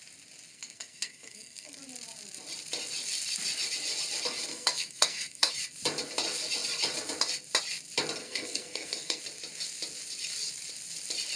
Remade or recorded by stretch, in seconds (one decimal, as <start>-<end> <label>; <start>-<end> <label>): 0.0-0.5 recorded; 0.5-1.8 remade; 1.8-4.5 recorded; 4.5-5.5 remade; 5.5-8.2 recorded; 8.2-9.2 remade; 9.2-11.4 recorded